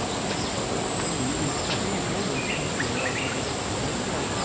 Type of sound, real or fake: real